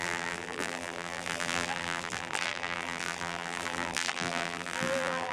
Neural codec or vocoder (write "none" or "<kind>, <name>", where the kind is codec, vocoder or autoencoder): vocoder, BigVGAN v2